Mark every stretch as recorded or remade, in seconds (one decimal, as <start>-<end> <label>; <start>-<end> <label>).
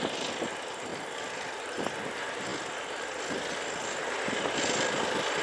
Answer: 0.0-0.9 recorded; 0.9-2.0 remade; 2.0-5.4 recorded